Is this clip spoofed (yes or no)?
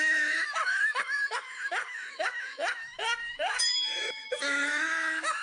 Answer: yes